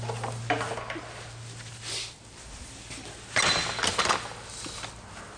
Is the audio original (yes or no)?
yes